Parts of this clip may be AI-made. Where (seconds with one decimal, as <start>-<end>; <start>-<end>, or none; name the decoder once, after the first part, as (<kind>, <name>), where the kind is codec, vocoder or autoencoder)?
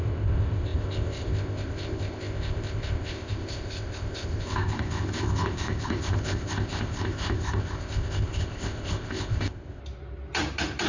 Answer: 0.0-9.8 (codec, ZipCodec)